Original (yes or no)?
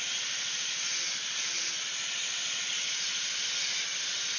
yes